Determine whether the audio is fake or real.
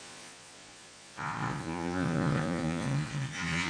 fake